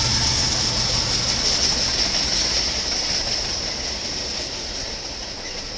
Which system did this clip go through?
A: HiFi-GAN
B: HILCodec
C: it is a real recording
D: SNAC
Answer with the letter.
C